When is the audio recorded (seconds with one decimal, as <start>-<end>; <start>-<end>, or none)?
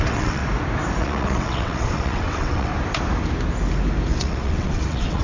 0.4-1.0; 2.7-4.1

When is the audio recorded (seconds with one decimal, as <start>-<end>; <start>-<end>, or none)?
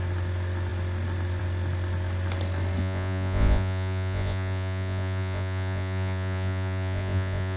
0.0-2.8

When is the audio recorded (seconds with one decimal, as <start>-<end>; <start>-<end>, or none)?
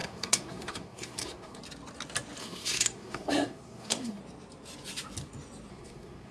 1.6-2.4; 4.2-5.7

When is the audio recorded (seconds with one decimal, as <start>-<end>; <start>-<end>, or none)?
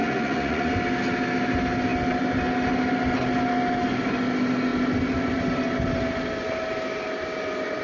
0.7-7.8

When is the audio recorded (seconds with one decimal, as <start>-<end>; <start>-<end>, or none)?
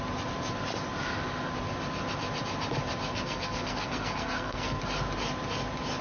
0.0-3.1; 4.8-6.0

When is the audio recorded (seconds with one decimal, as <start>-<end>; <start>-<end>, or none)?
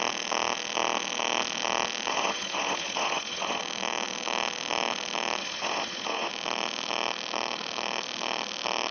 0.0-2.1; 3.6-5.4; 6.3-8.9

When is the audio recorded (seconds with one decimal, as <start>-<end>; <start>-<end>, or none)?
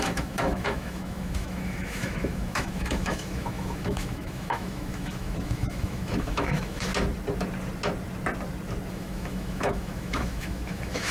6.9-8.9